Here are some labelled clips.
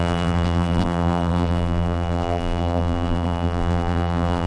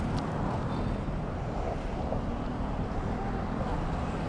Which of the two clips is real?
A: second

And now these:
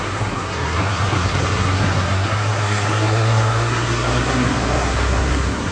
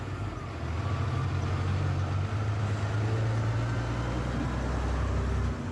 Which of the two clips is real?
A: second